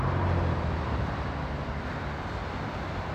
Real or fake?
real